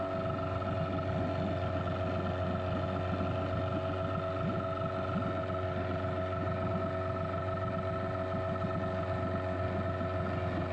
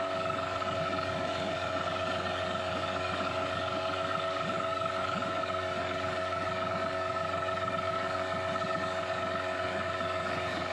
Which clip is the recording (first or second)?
first